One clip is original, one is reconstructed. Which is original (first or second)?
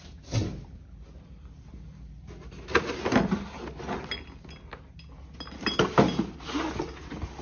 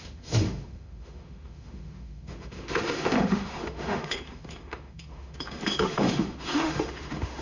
first